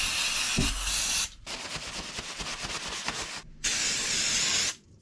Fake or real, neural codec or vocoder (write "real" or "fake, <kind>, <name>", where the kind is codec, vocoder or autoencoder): real